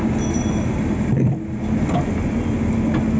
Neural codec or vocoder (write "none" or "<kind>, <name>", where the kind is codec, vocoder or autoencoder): none